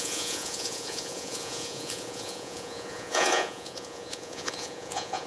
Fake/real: fake